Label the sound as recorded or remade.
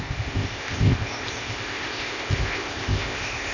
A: remade